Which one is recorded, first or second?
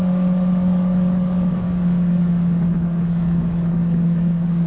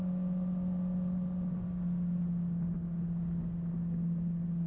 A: second